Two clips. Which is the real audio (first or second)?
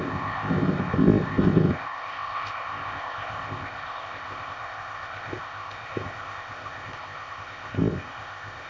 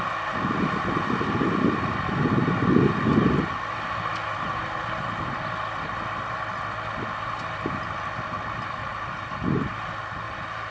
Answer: second